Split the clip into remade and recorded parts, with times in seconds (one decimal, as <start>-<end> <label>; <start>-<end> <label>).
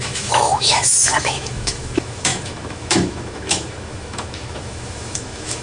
0.0-5.6 remade